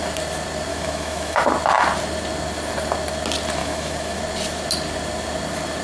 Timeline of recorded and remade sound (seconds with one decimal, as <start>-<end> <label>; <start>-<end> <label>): 0.0-0.7 recorded; 0.7-1.4 remade; 1.4-3.6 recorded; 3.6-4.2 remade; 4.2-5.8 recorded